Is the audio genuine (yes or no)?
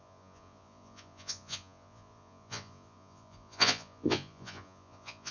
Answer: no